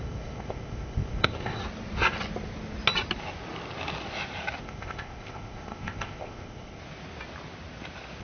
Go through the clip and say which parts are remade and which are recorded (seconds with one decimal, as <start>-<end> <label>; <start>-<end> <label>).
0.0-1.6 remade; 1.6-4.6 recorded; 4.6-6.8 remade; 6.8-8.2 recorded

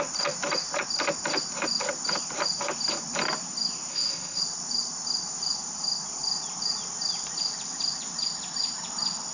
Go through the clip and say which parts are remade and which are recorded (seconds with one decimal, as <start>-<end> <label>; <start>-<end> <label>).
0.0-3.9 recorded; 3.9-4.4 remade; 4.4-9.3 recorded

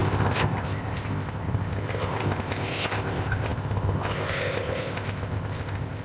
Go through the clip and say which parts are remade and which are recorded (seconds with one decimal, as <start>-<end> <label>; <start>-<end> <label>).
0.0-6.0 remade

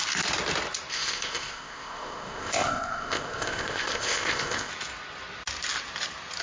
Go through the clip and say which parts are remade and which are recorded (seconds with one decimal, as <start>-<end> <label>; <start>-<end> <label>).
0.0-0.9 recorded; 0.9-4.7 remade; 4.7-6.4 recorded

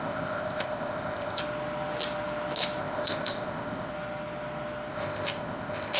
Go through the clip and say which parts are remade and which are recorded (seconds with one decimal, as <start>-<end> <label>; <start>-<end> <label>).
0.0-1.4 remade; 1.4-2.8 recorded; 2.8-3.9 remade; 3.9-4.9 recorded; 4.9-6.0 remade

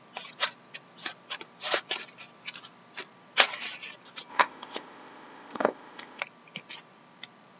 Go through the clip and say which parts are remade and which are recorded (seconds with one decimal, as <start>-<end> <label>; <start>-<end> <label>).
0.0-4.3 recorded; 4.3-6.2 remade; 6.2-7.6 recorded

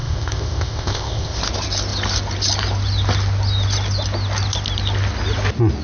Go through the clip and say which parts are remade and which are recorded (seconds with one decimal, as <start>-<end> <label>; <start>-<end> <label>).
0.0-1.4 remade; 1.4-5.8 recorded

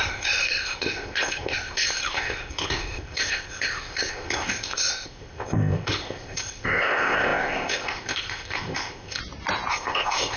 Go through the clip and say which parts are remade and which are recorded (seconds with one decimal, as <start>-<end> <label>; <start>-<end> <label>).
0.0-9.2 remade; 9.2-9.7 recorded; 9.7-10.4 remade